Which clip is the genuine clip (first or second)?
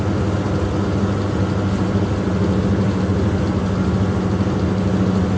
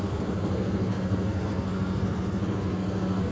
first